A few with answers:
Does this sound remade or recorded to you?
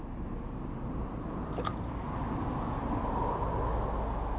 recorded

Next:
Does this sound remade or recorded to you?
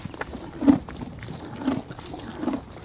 recorded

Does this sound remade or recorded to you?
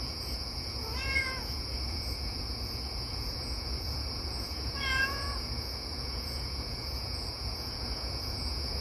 remade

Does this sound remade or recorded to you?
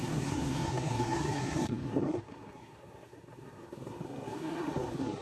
remade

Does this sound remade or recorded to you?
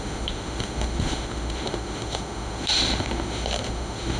remade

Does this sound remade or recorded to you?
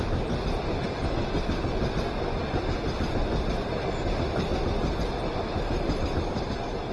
recorded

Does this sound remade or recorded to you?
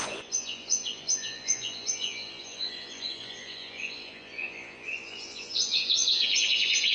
remade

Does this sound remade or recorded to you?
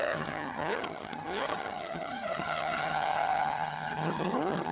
remade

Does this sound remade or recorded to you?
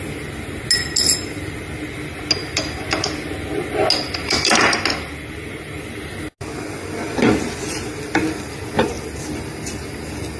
recorded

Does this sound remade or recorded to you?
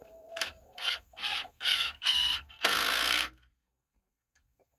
remade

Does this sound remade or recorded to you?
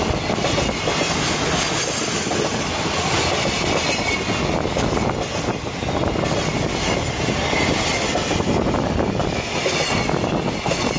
recorded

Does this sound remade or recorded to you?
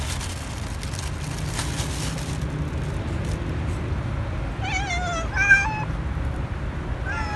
recorded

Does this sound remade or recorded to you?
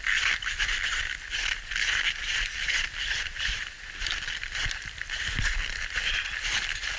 recorded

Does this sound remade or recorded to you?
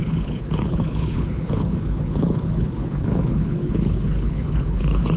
remade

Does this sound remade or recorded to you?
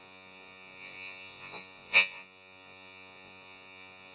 remade